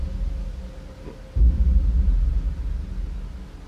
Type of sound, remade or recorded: recorded